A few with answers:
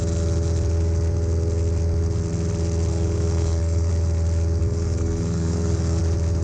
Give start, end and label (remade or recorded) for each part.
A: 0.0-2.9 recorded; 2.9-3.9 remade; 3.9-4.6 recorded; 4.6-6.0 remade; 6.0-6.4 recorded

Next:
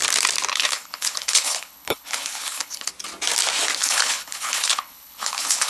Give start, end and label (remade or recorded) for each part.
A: 0.0-0.5 recorded; 0.5-2.9 remade; 2.9-3.8 recorded; 3.8-5.7 remade

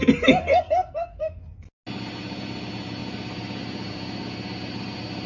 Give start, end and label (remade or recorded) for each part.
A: 0.0-0.4 recorded; 0.4-1.4 remade; 1.4-5.3 recorded

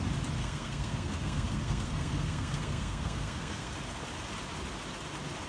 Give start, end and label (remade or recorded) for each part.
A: 0.0-0.4 recorded; 0.4-3.7 remade; 3.7-5.5 recorded

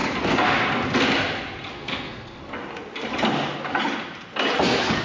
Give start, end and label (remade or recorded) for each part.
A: 0.0-1.7 recorded; 1.7-2.4 remade; 2.4-5.0 recorded

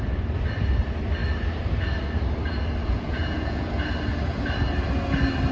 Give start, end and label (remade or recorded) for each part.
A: 0.0-2.8 recorded; 2.8-3.7 remade; 3.7-5.5 recorded

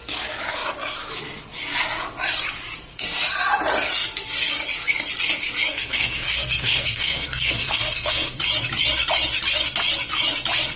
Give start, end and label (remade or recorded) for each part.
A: 0.0-5.7 recorded; 5.7-8.4 remade; 8.4-10.8 recorded